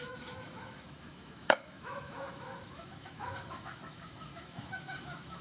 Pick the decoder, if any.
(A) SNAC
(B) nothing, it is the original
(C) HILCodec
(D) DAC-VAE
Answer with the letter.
D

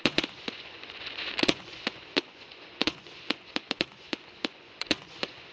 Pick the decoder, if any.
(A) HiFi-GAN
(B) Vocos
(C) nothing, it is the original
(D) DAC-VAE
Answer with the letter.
B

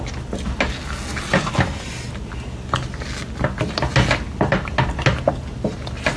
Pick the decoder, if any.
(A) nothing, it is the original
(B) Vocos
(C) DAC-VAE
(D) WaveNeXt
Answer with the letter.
A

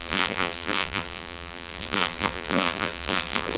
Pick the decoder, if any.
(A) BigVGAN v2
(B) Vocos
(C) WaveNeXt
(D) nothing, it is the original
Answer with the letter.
A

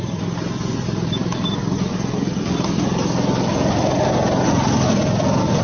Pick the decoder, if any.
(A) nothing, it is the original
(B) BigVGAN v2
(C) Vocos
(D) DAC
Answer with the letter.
A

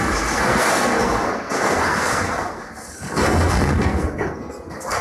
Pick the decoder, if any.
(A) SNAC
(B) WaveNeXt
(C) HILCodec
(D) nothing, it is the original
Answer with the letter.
A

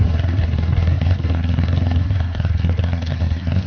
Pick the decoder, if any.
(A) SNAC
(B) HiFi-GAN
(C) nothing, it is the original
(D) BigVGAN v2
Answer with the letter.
A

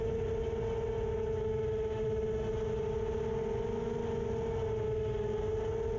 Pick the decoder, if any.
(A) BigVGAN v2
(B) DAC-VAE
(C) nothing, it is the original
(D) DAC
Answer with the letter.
C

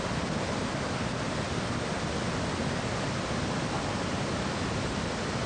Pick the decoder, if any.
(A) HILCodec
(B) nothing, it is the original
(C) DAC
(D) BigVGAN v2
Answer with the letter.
B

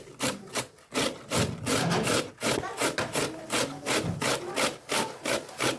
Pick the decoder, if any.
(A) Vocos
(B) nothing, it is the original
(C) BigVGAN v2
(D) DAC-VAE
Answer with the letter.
B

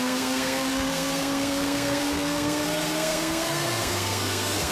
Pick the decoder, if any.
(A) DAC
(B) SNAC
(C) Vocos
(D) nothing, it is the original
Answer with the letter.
B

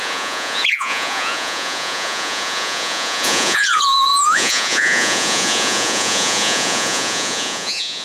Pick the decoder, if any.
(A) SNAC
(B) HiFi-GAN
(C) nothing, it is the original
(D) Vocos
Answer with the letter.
D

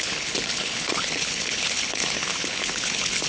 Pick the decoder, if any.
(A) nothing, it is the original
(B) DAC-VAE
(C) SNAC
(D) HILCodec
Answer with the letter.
D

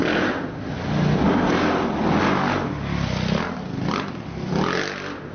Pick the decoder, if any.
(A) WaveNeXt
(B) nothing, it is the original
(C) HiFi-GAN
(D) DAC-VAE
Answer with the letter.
B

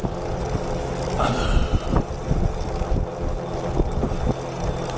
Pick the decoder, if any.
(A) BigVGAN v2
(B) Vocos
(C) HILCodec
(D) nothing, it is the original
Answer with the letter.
D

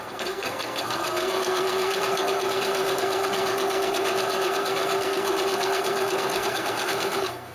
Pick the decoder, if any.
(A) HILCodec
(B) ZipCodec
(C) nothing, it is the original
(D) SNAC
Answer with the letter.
D